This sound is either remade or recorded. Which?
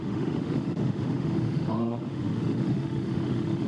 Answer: remade